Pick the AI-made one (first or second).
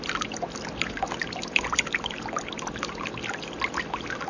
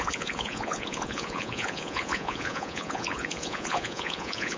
second